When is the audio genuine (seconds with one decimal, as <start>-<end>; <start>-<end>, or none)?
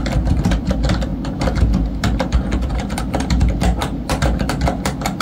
0.0-5.2